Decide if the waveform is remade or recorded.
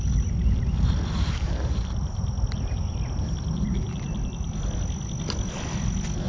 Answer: recorded